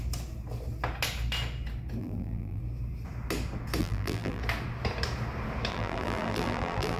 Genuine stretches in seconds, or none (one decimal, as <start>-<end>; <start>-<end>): 0.0-2.0; 2.6-3.8; 4.4-5.7